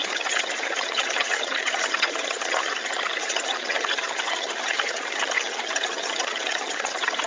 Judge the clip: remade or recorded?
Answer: remade